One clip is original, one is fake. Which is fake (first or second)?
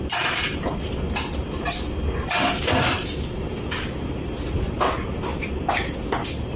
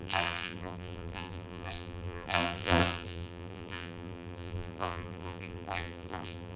second